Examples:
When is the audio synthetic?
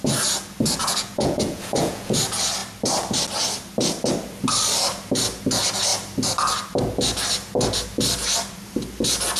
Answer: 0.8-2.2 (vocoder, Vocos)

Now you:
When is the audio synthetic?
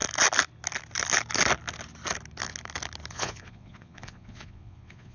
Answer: 3.1-5.1 (vocoder, Vocos)